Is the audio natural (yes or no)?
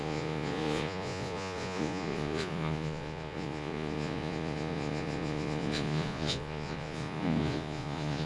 no